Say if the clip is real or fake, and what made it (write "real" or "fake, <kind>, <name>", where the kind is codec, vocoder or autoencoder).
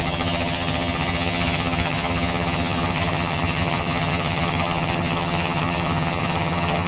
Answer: fake, vocoder, HiFi-GAN